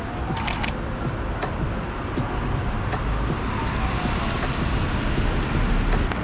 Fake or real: real